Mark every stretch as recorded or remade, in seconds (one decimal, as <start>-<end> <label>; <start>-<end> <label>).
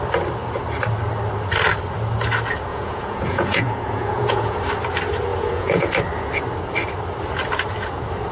0.0-2.7 recorded; 2.7-4.6 remade; 4.6-5.3 recorded; 5.3-5.9 remade; 5.9-8.3 recorded